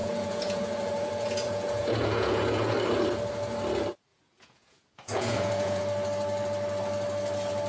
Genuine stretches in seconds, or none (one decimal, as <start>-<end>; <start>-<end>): 2.7-4.1; 5.8-7.7